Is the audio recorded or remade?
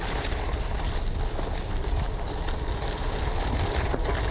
recorded